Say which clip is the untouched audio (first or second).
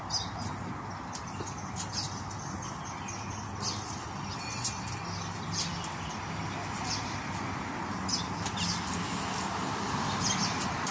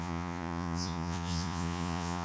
first